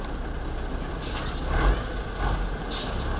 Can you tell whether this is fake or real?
real